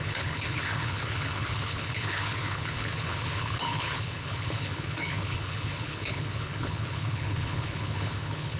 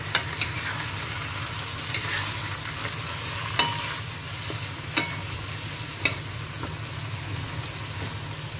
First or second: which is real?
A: second